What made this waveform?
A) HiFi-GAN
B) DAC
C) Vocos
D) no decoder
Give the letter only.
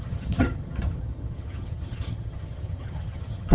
A